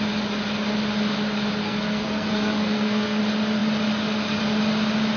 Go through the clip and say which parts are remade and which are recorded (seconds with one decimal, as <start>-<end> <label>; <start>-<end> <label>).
0.0-1.6 recorded; 1.6-3.2 remade; 3.2-5.2 recorded